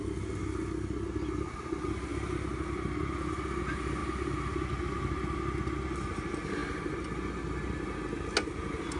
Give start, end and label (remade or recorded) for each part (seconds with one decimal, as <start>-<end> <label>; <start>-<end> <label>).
0.0-9.0 recorded